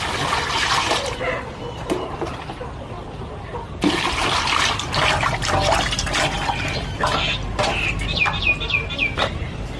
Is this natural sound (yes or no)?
yes